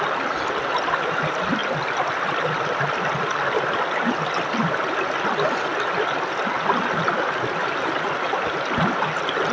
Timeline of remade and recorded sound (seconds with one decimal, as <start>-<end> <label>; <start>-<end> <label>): 0.0-9.5 recorded